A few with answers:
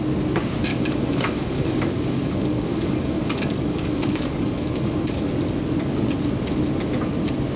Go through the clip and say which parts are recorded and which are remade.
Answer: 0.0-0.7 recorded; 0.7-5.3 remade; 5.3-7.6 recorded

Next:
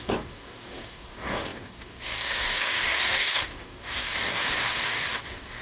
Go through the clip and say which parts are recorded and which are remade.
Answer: 0.0-5.6 remade